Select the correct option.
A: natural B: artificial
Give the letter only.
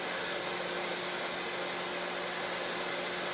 A